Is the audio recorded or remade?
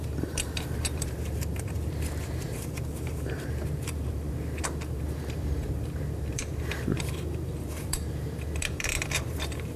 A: remade